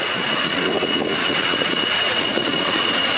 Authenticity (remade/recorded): remade